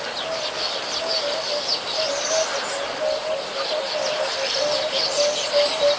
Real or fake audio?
real